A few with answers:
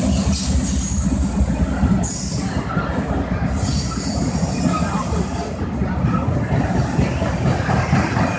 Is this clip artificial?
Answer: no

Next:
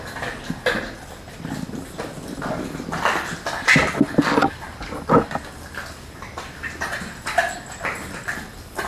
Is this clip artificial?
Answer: no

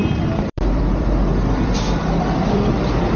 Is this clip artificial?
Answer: yes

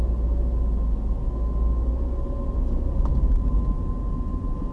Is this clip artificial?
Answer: no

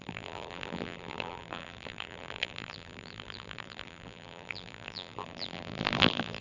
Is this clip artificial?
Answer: yes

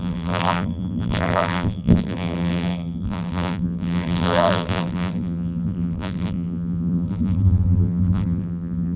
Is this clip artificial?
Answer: yes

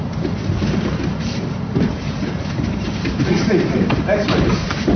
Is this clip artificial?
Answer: yes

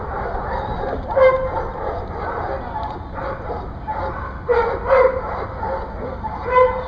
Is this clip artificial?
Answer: no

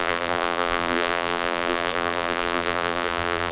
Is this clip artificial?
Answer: yes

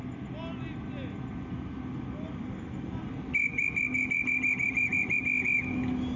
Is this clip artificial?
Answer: no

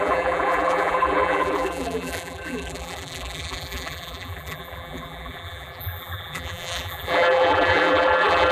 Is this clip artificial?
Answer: yes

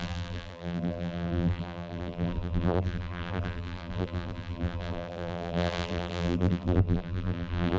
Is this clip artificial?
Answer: yes